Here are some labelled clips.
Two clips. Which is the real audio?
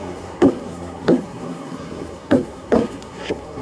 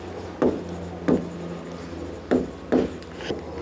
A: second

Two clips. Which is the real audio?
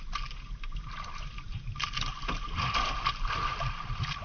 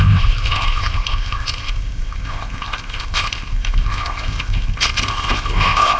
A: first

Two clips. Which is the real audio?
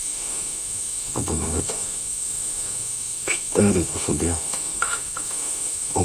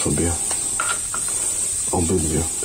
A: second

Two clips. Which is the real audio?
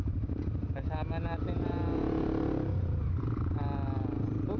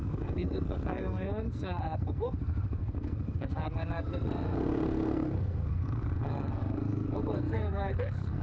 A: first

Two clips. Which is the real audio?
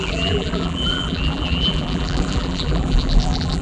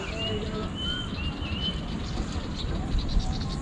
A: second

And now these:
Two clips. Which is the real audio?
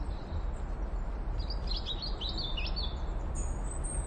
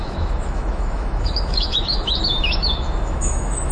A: first